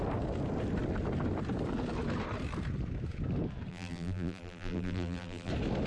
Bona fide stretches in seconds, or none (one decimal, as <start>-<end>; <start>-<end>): 0.0-3.7; 5.5-5.9